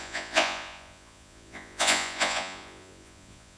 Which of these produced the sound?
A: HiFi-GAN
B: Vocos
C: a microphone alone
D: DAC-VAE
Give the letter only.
B